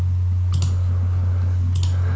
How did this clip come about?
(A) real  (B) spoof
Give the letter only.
A